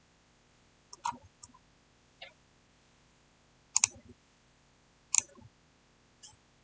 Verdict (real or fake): real